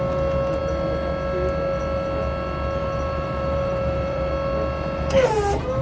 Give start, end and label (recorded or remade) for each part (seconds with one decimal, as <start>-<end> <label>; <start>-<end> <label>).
0.0-2.8 recorded; 2.8-4.3 remade; 4.3-5.8 recorded